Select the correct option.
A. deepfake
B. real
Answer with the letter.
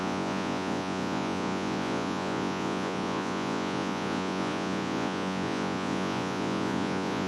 A